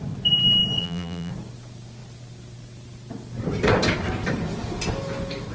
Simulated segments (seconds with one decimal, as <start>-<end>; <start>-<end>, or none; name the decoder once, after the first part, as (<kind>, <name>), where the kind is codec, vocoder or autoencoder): 0.8-1.3 (vocoder, BigVGAN v2)